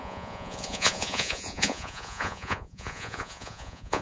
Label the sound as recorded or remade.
remade